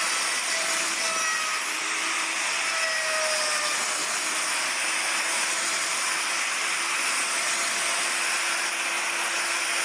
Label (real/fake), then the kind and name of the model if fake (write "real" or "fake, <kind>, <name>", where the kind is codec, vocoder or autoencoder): real